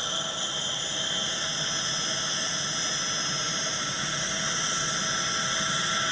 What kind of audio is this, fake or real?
real